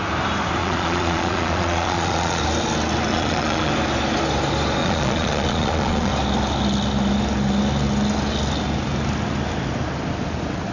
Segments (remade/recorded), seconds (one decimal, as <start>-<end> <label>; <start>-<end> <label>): 0.0-0.6 recorded; 0.6-2.4 remade; 2.4-3.1 recorded; 3.1-3.7 remade; 3.7-4.8 recorded; 4.8-6.1 remade; 6.1-10.7 recorded